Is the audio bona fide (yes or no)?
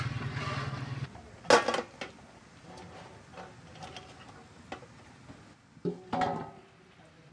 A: yes